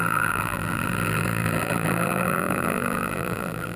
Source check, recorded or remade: remade